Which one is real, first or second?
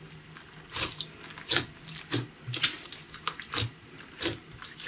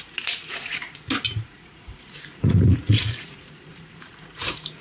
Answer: first